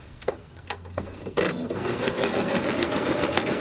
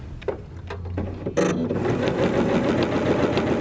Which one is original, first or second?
second